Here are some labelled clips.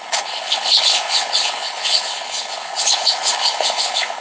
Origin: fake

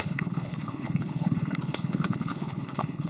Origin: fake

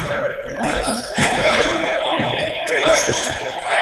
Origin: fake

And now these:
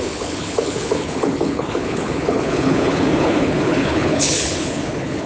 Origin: fake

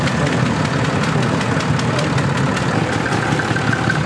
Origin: real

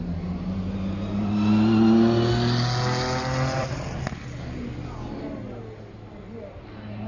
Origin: real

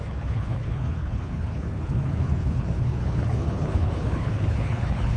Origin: fake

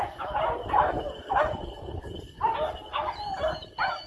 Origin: real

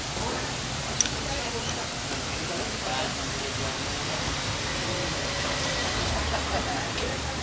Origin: real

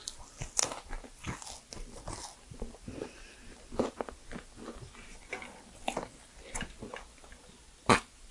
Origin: real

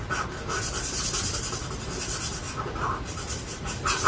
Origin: real